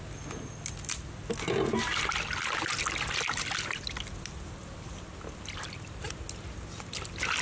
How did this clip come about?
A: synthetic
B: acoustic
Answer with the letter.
B